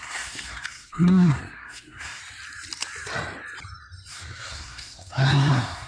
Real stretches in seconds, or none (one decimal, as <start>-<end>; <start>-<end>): 2.2-4.1